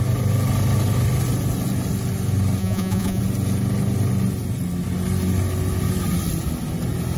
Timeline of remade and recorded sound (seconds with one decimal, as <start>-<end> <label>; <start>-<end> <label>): 0.0-2.6 recorded; 2.6-3.2 remade; 3.2-7.2 recorded